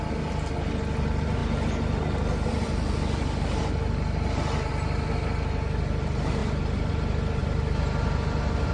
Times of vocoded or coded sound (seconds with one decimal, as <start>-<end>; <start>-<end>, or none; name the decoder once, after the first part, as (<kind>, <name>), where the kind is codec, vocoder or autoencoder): none